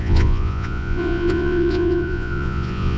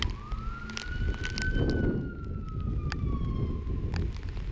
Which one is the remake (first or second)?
first